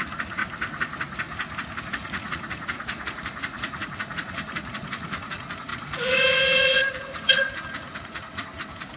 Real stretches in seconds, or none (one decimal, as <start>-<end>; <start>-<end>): 0.4-1.8; 8.5-9.0